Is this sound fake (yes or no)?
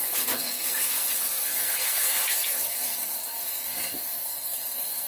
yes